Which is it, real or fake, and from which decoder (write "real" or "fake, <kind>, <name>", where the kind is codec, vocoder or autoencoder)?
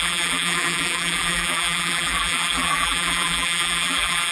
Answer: fake, vocoder, BigVGAN v2